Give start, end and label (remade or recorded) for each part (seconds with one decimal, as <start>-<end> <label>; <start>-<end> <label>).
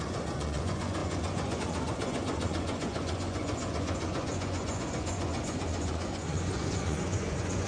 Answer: 0.0-7.7 remade